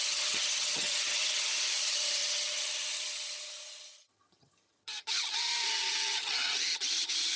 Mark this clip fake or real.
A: fake